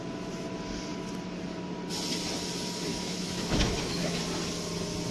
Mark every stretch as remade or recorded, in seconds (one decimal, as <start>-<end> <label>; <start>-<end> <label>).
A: 0.0-2.9 recorded; 2.9-4.2 remade; 4.2-5.1 recorded